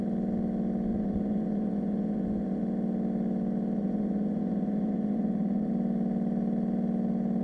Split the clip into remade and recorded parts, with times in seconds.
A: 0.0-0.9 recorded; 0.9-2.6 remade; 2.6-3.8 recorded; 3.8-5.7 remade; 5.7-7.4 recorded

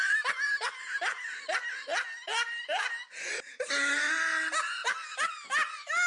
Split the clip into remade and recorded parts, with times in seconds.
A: 0.0-6.1 recorded

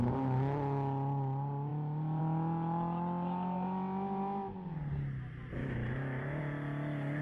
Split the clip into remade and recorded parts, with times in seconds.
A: 0.0-5.6 recorded; 5.6-6.4 remade; 6.4-7.2 recorded

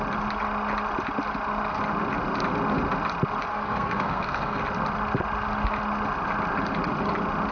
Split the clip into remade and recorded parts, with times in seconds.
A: 0.0-3.5 recorded; 3.5-4.6 remade; 4.6-7.5 recorded

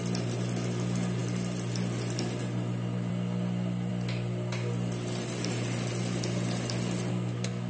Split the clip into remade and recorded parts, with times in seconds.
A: 0.0-7.1 recorded; 7.1-7.7 remade